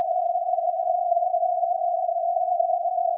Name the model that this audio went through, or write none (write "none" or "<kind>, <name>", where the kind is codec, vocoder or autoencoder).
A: none